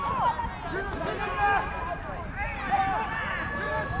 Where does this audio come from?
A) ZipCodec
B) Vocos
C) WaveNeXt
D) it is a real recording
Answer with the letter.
D